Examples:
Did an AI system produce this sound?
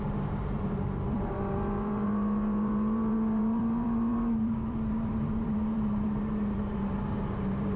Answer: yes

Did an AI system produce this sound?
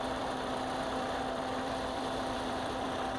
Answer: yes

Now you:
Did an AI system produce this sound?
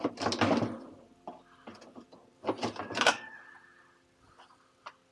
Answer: no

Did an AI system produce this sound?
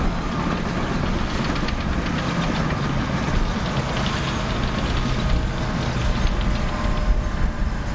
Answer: no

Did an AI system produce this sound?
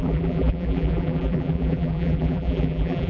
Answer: yes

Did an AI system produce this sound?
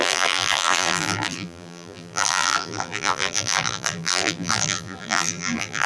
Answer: yes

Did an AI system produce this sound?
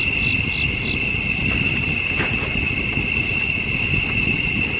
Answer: yes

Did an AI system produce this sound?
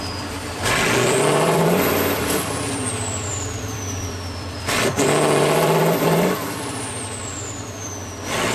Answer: yes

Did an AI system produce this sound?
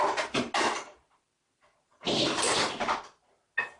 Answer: no